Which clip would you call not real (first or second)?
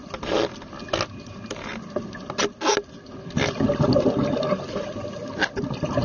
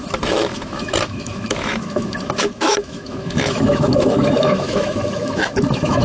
second